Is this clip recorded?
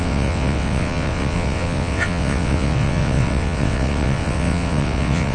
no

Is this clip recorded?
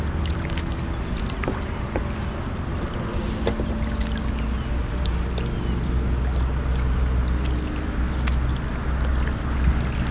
yes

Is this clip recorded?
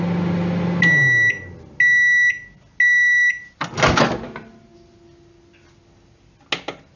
yes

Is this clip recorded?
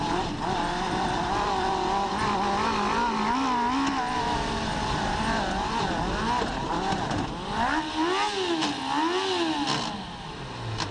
yes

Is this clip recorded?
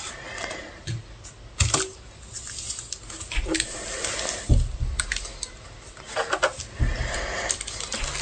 yes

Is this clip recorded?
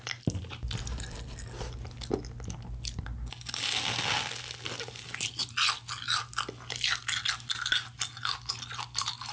yes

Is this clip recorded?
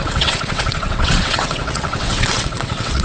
no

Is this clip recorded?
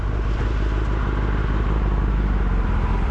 yes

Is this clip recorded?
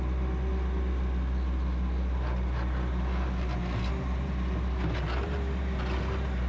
yes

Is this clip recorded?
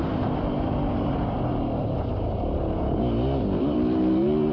yes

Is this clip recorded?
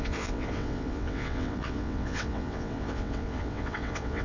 no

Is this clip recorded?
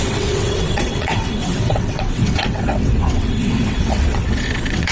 no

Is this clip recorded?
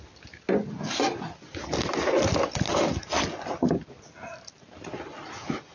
yes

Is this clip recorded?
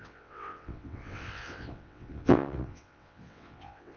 no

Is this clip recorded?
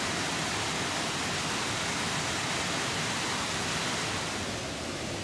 yes